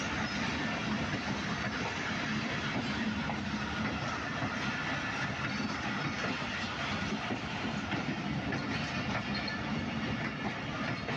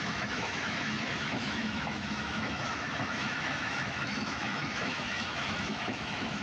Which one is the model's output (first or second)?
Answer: second